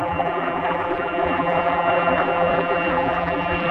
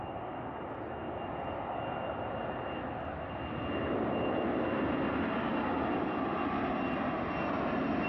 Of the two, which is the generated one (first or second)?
first